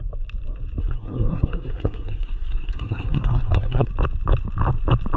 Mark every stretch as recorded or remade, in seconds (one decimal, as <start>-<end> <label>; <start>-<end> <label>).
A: 0.0-0.8 recorded; 0.8-3.9 remade; 3.9-5.2 recorded